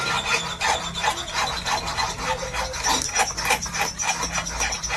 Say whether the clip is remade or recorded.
recorded